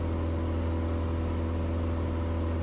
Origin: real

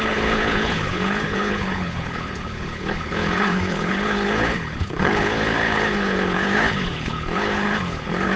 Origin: fake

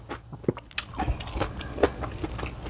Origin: real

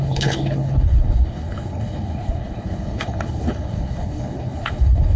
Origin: fake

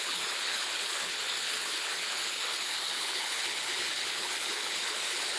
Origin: fake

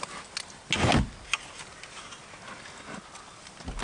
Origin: real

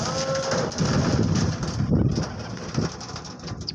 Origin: real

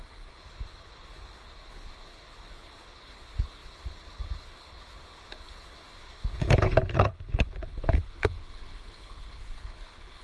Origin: fake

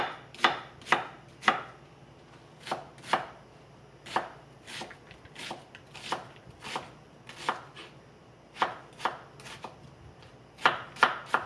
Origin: real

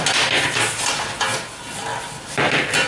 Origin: real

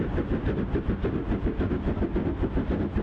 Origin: real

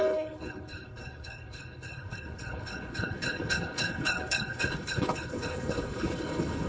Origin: fake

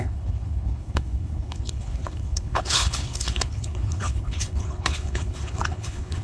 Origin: fake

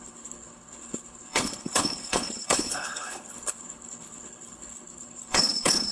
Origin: fake